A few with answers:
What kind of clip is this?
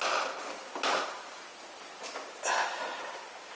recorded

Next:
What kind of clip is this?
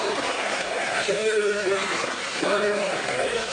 remade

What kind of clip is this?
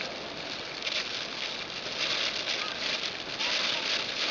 recorded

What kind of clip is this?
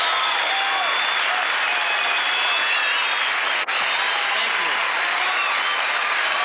recorded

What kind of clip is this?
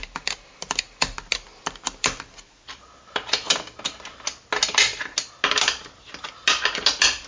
recorded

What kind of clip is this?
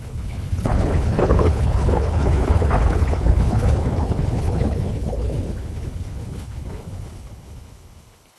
remade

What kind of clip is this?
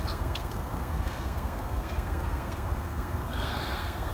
remade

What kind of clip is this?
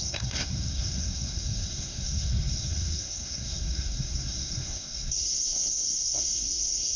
remade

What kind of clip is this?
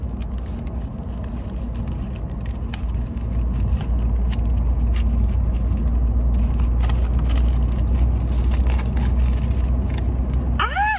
recorded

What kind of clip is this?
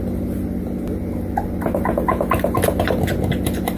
recorded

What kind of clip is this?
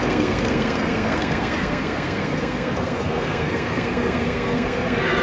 remade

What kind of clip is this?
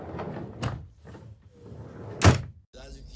recorded